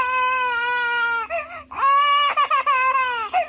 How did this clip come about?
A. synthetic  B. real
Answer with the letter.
B